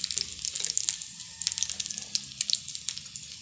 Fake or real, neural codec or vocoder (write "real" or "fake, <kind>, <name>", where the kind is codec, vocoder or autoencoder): real